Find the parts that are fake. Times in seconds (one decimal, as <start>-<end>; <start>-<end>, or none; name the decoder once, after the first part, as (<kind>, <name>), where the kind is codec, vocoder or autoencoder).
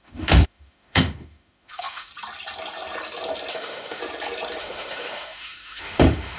0.0-2.1 (autoencoder, DAC-VAE); 3.5-4.0; 4.6-6.4